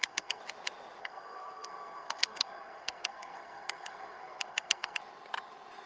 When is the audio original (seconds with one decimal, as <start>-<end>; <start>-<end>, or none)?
0.4-1.0; 5.0-5.9